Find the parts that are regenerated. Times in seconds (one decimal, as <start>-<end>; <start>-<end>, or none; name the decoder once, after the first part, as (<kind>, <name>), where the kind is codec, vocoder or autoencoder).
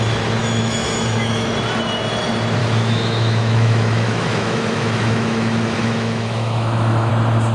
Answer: 0.4-1.5 (autoencoder, DAC-VAE); 2.6-7.1